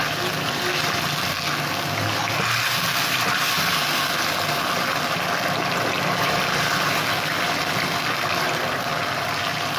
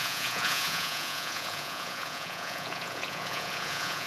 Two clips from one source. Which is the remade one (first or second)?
second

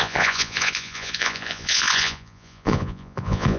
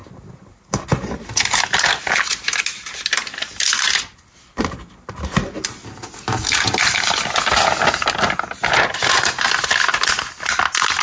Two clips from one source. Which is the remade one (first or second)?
first